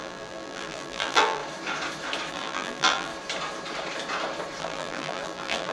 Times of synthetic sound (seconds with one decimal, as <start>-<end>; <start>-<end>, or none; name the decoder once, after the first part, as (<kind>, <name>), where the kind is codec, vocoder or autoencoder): 0.0-1.4 (vocoder, BigVGAN v2); 2.3-3.1; 4.6-5.7